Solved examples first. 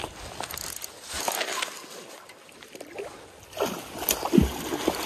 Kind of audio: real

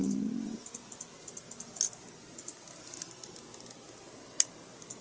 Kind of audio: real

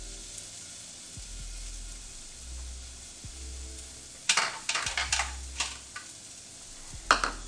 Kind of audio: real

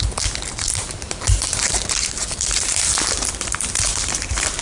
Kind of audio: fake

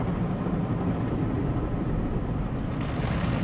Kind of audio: real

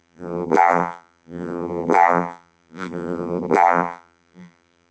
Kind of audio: fake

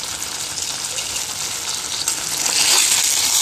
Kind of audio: real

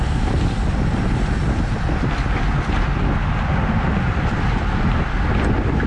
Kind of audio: real